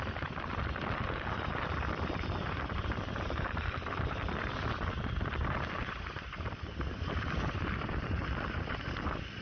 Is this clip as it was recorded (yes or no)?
yes